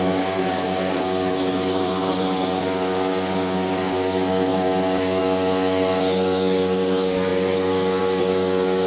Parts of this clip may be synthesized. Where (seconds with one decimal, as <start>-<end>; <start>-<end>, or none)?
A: 0.0-8.9